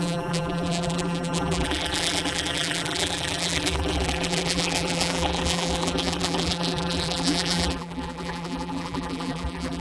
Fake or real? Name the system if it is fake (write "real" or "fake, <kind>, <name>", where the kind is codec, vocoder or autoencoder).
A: fake, vocoder, BigVGAN v2